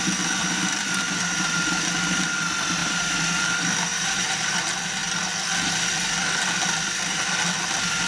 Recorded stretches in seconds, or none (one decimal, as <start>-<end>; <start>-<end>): 0.0-0.4; 1.5-2.8; 3.4-3.9; 4.6-8.1